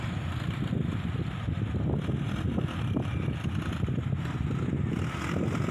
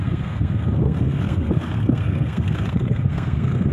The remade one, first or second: second